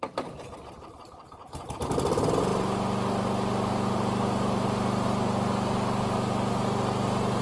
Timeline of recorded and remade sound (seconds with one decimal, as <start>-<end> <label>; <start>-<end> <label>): 0.0-7.4 recorded